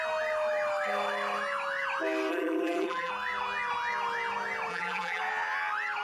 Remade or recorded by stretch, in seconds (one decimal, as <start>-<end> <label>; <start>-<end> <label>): 0.0-2.3 recorded; 2.3-3.1 remade; 3.1-4.7 recorded; 4.7-5.2 remade; 5.2-6.0 recorded